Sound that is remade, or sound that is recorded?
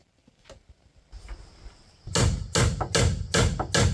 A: recorded